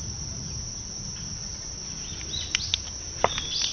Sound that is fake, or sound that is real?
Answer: real